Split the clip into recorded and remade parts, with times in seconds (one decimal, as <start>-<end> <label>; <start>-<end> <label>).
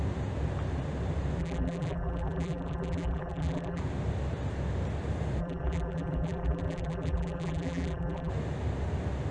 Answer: 0.0-1.4 recorded; 1.4-3.8 remade; 3.8-5.4 recorded; 5.4-8.3 remade; 8.3-9.3 recorded